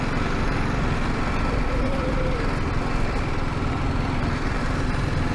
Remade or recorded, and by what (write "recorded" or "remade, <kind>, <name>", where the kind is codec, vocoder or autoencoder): recorded